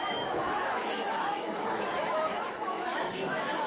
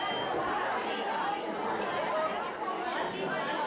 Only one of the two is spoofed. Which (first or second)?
first